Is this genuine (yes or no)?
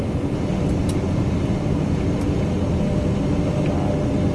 yes